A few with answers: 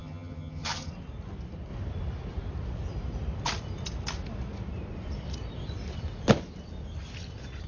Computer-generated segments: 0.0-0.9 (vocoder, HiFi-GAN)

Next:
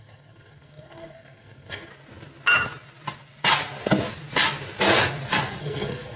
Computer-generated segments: 0.0-1.9 (codec, SNAC); 5.6-6.2

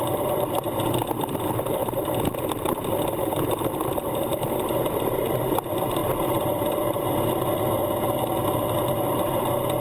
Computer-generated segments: 0.0-1.8 (vocoder, BigVGAN v2); 4.6-6.0; 6.7-7.8; 8.9-9.8

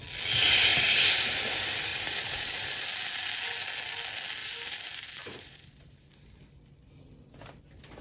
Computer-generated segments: 0.7-1.2 (vocoder, BigVGAN v2); 1.9-2.8; 4.4-6.1